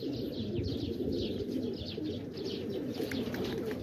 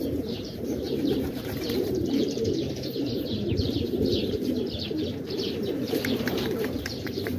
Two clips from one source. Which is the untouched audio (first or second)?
first